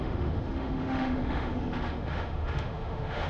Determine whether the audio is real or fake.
fake